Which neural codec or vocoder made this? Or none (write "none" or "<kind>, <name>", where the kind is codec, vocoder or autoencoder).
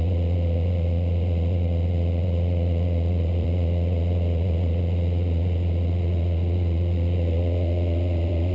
vocoder, Vocos